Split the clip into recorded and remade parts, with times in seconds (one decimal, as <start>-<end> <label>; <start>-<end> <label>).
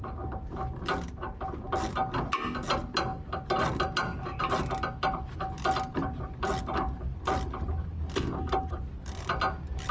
0.0-9.9 recorded